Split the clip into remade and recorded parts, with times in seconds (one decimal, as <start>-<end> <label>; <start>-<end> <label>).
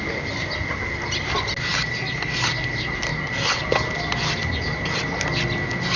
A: 0.0-6.0 recorded